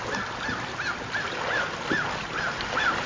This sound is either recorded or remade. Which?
recorded